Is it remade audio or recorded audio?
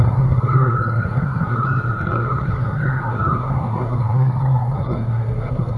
remade